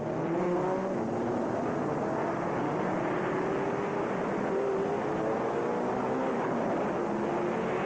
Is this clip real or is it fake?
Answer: real